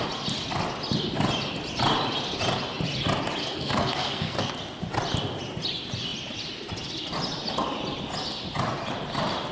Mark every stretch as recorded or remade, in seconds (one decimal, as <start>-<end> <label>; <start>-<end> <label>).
0.0-3.4 recorded; 3.4-4.5 remade; 4.5-9.5 recorded